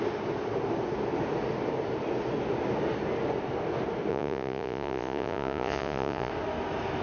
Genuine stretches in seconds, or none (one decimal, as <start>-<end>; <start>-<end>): 0.0-4.1; 6.3-7.0